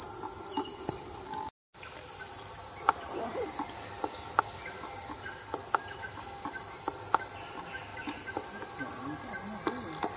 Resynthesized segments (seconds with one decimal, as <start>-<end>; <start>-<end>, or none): none